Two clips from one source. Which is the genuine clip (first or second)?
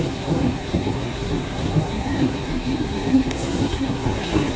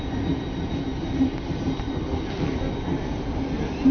second